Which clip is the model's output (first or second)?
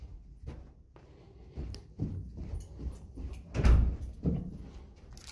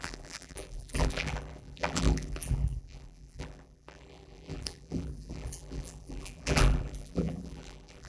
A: second